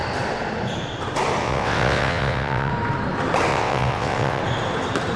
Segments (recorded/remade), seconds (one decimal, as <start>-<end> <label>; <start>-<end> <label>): 0.0-1.4 recorded; 1.4-2.7 remade; 2.7-3.5 recorded; 3.5-4.4 remade; 4.4-5.2 recorded